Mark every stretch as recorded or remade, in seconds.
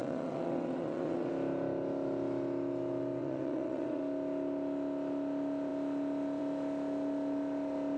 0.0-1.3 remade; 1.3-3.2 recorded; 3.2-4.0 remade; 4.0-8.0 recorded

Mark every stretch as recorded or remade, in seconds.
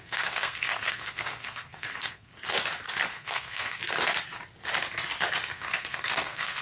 0.0-2.3 remade; 2.3-3.1 recorded; 3.1-3.8 remade; 3.8-5.4 recorded; 5.4-6.6 remade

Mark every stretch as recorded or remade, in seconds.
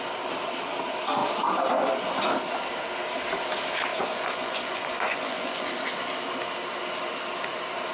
0.0-3.9 recorded; 3.9-5.7 remade; 5.7-7.9 recorded